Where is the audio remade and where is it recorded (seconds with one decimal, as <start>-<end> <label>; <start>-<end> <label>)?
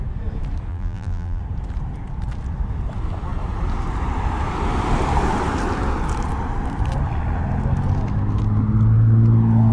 0.0-0.7 recorded; 0.7-1.4 remade; 1.4-9.7 recorded